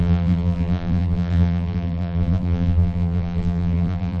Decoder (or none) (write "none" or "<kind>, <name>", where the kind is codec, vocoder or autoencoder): vocoder, BigVGAN v2